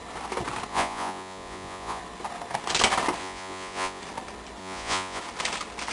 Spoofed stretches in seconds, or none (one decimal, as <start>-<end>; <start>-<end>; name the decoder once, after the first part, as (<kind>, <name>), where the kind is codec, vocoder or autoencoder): 0.7-2.0 (vocoder, Vocos); 3.2-4.0; 4.6-5.2